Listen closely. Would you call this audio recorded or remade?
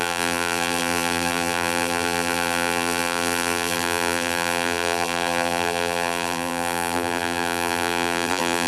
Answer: remade